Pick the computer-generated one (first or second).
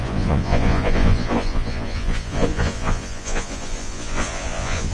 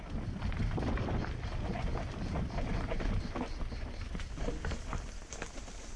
first